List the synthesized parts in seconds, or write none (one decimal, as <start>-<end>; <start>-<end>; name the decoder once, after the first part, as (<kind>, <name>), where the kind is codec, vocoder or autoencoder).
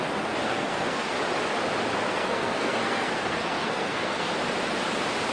0.4-1.1 (codec, SNAC); 2.1-4.3